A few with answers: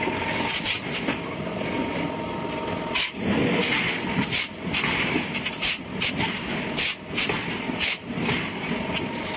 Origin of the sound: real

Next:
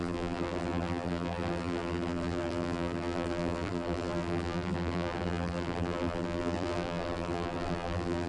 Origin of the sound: fake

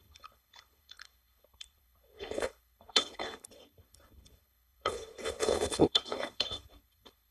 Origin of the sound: fake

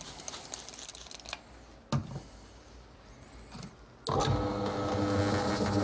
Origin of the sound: real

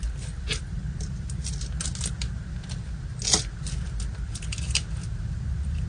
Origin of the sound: real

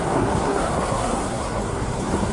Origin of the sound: fake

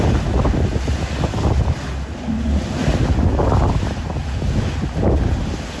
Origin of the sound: real